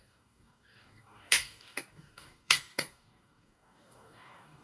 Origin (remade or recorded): remade